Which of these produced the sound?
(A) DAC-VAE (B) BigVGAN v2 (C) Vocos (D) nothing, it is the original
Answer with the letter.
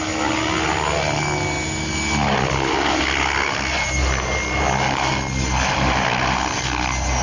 D